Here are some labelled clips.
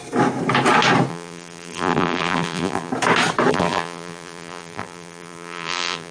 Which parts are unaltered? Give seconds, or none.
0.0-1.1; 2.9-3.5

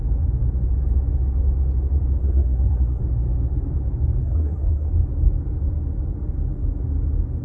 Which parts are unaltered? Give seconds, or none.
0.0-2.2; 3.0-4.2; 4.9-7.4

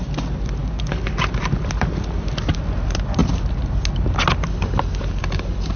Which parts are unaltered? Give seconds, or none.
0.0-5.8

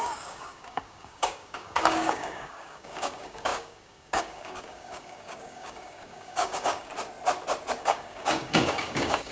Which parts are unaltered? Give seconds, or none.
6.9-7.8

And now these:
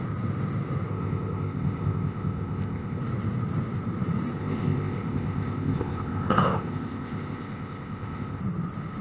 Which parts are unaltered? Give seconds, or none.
0.0-0.9; 3.0-4.4; 8.4-9.0